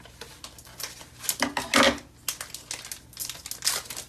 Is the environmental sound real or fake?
real